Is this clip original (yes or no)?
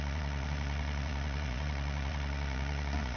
no